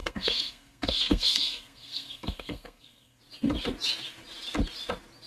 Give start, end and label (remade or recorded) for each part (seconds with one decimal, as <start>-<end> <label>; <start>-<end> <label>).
0.0-3.2 remade; 3.2-5.3 recorded